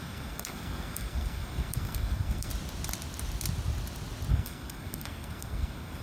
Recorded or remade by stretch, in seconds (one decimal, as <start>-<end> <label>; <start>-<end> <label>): 0.0-2.5 remade; 2.5-4.3 recorded; 4.3-6.0 remade